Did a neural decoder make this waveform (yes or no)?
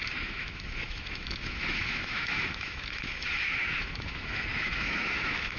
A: yes